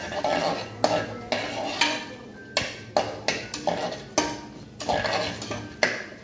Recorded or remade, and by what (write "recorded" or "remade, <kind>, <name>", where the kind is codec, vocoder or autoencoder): recorded